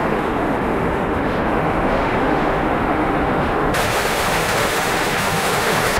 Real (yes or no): no